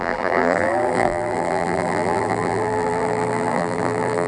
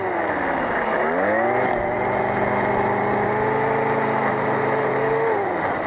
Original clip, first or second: second